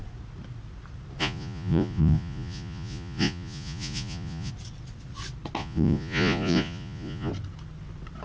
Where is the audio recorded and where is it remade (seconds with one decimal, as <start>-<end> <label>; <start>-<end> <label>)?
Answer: 0.0-1.2 recorded; 1.2-4.5 remade; 4.5-5.6 recorded; 5.6-7.3 remade; 7.3-8.2 recorded